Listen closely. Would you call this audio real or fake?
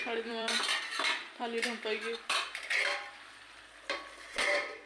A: fake